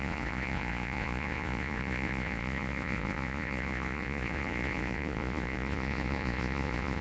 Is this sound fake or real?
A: fake